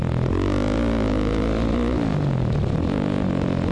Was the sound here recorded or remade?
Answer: recorded